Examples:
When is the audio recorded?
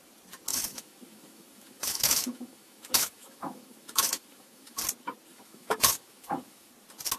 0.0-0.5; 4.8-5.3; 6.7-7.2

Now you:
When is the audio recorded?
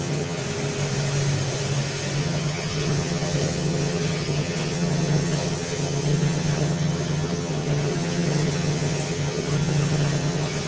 0.4-2.2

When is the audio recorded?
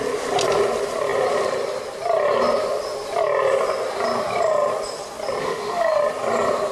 0.0-5.4; 6.0-6.7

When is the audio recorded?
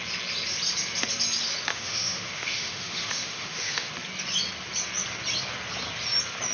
0.0-1.7; 3.9-6.5